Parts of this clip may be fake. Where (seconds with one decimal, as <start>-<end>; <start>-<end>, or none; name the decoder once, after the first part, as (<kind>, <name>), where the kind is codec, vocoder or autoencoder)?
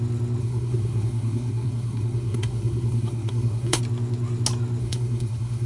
0.4-3.8 (codec, SNAC); 4.8-5.7